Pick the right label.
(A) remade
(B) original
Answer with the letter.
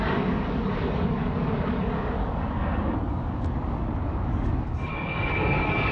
A